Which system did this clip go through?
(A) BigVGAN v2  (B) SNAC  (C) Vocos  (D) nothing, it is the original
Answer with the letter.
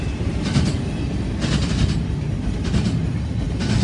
D